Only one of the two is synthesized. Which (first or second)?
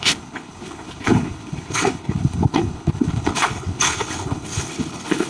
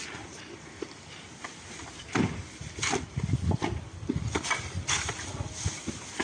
first